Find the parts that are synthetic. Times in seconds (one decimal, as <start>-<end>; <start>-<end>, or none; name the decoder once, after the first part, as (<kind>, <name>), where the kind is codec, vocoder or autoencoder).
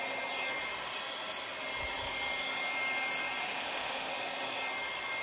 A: 3.4-4.1 (autoencoder, DAC-VAE)